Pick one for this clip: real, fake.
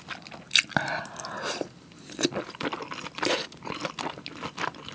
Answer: real